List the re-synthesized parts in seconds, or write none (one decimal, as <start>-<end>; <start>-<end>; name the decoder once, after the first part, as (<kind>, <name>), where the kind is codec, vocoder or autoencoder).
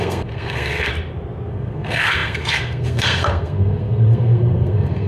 0.0-0.9 (codec, SNAC); 1.5-5.1